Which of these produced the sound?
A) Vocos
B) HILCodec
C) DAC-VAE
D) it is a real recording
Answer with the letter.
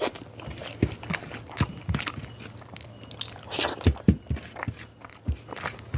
D